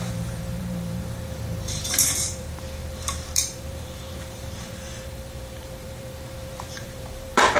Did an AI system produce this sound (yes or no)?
yes